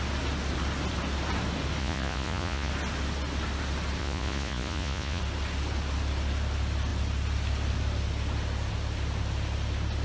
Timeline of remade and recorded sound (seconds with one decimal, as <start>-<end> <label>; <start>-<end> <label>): 0.0-1.8 recorded; 1.8-2.7 remade; 2.7-4.0 recorded; 4.0-5.2 remade; 5.2-10.0 recorded